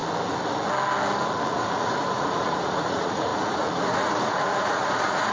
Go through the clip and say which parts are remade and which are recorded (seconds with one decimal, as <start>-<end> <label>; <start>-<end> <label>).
0.0-1.5 recorded; 1.5-5.3 remade